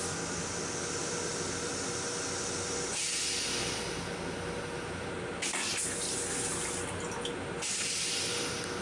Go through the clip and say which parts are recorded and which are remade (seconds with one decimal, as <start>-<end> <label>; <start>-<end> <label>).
0.0-8.8 recorded